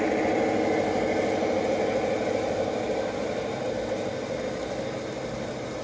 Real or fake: real